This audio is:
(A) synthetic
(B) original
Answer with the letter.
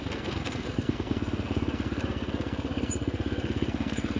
A